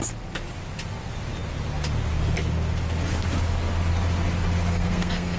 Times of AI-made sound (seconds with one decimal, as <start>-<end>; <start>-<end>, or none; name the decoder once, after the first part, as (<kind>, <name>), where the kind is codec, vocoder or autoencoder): 4.7-5.4 (codec, SNAC)